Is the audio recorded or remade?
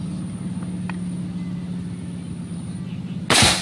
recorded